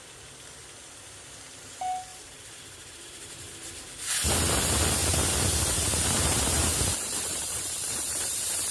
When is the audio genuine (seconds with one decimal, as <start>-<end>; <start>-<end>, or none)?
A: 0.0-2.1; 3.8-5.0